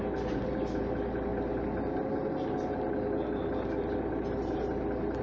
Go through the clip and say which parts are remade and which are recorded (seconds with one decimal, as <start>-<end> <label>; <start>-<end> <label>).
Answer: 0.0-5.2 recorded